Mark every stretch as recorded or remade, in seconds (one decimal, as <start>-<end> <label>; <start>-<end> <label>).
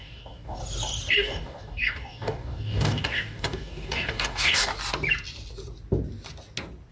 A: 0.0-0.6 remade; 0.6-1.1 recorded; 1.1-4.7 remade; 4.7-6.9 recorded